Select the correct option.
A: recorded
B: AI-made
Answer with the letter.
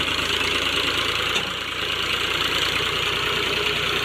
A